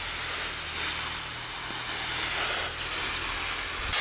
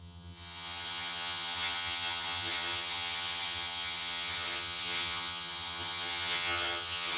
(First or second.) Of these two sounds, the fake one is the second